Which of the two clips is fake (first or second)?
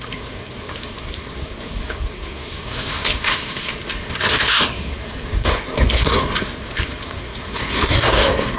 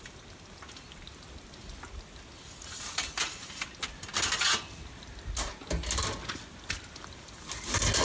first